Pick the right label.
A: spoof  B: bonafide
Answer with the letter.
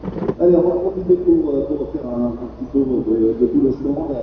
B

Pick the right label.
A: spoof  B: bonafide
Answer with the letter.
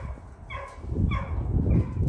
B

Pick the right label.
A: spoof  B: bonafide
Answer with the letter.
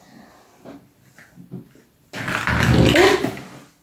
B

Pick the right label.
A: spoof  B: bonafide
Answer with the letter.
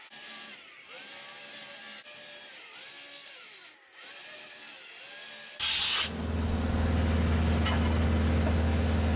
B